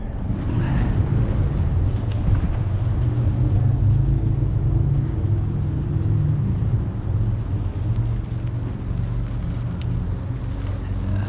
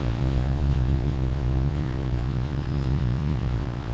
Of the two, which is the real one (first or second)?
first